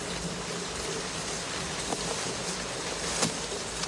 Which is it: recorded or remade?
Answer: recorded